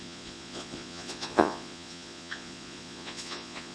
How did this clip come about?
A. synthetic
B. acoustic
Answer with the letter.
A